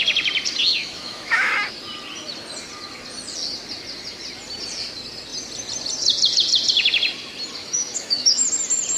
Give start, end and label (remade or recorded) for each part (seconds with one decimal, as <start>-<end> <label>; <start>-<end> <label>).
0.0-0.8 recorded; 0.8-1.5 remade; 1.5-7.6 recorded; 7.6-8.5 remade; 8.5-9.0 recorded